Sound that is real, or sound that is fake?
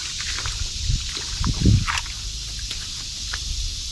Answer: real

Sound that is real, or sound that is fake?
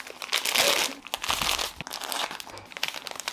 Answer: real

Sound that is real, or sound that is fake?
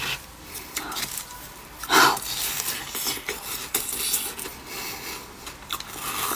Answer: real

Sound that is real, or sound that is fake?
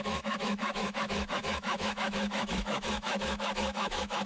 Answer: fake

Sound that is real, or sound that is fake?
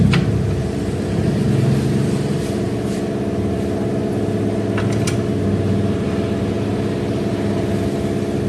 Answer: real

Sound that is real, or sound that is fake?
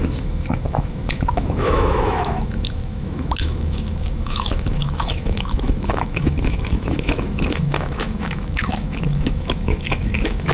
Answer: fake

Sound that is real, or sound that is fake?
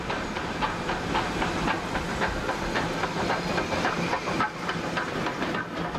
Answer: real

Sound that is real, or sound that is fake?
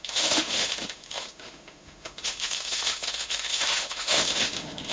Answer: fake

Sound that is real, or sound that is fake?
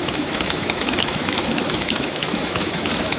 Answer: fake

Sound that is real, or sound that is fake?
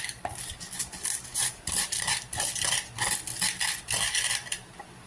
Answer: real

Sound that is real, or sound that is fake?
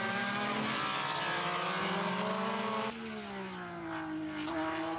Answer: real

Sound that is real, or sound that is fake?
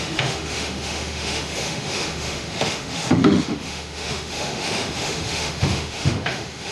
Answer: fake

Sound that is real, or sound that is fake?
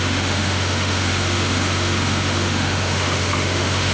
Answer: fake